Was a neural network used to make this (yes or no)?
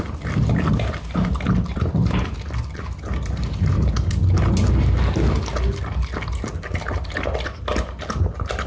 no